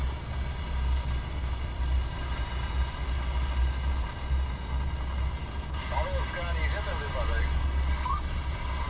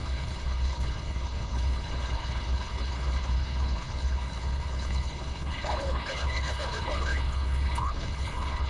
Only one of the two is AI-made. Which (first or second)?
second